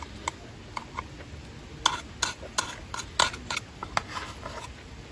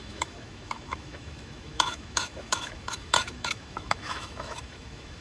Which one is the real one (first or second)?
first